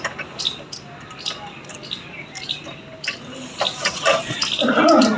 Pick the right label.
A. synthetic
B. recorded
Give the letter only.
B